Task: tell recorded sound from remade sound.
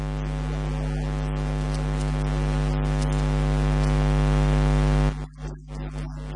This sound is recorded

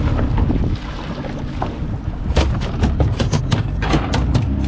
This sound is recorded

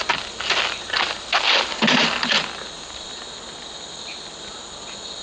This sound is recorded